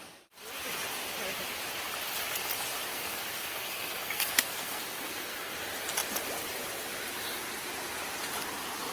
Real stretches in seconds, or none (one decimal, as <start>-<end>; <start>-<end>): 0.0-2.9; 5.5-8.9